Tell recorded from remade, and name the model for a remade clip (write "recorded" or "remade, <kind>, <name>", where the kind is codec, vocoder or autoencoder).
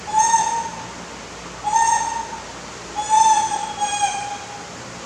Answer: recorded